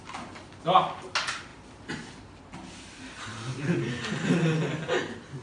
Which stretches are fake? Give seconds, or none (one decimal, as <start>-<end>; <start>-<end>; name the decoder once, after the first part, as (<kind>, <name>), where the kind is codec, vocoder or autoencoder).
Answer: none